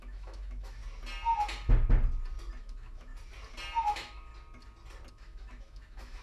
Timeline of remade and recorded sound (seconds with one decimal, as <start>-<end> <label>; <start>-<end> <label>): 0.0-0.8 remade; 0.8-2.6 recorded; 2.6-3.1 remade; 3.1-3.8 recorded; 3.8-4.3 remade; 4.3-5.1 recorded; 5.1-6.2 remade